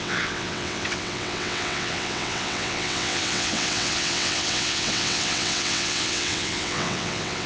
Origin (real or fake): fake